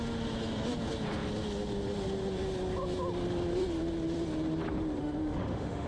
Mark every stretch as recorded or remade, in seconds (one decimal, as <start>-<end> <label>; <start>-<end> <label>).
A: 0.0-5.0 recorded; 5.0-5.9 remade